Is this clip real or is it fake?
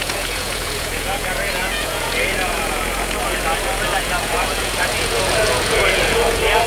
fake